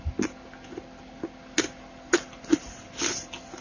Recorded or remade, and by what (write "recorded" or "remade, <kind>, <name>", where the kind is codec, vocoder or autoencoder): recorded